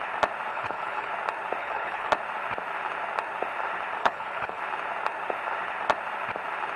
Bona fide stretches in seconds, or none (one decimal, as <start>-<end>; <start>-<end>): 0.0-0.5; 1.1-1.6; 2.1-4.0; 4.6-6.8